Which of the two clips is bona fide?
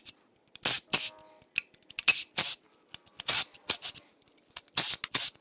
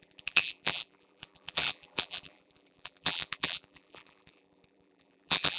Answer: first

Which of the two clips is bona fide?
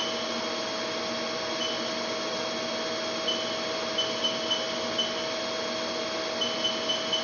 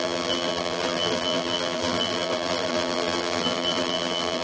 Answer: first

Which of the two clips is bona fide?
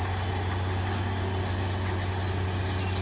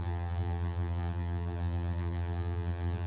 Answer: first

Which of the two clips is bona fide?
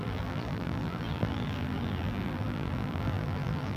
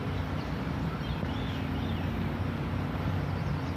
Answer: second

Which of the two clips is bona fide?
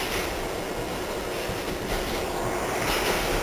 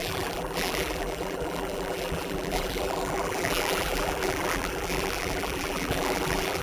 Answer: first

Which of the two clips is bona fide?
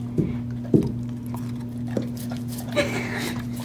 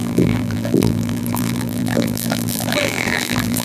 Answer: first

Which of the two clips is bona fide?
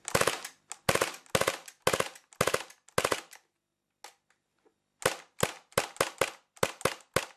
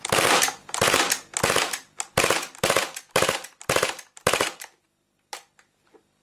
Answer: first